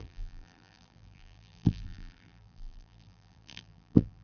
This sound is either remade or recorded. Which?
remade